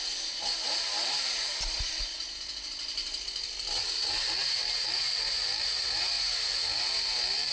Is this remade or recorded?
remade